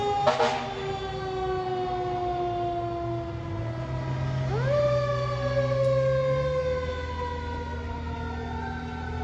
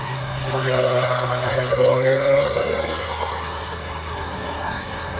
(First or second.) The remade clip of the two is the second